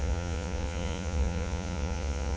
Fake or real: fake